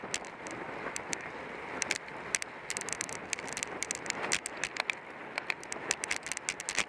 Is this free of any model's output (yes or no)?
yes